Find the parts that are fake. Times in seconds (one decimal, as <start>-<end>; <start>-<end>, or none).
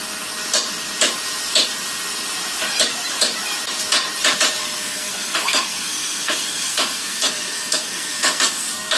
4.6-9.0